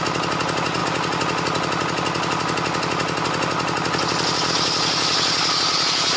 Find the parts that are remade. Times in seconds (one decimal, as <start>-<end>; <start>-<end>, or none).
none